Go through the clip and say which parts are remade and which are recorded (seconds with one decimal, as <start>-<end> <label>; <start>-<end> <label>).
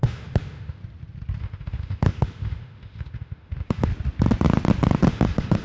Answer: 0.0-0.8 remade; 0.8-1.4 recorded; 1.4-3.9 remade; 3.9-5.1 recorded; 5.1-5.6 remade